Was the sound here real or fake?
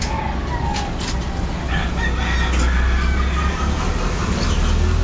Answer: real